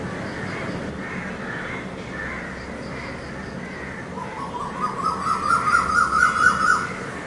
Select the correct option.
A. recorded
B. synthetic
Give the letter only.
A